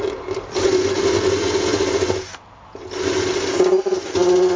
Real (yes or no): yes